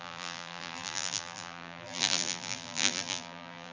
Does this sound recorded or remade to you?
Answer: remade